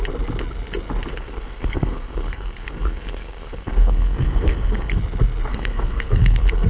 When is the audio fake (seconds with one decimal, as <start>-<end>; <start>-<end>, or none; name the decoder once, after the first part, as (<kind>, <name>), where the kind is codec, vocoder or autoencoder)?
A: 1.1-5.0 (codec, SNAC); 5.5-6.7